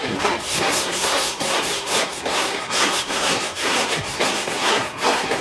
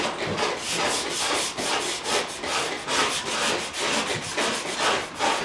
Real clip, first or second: second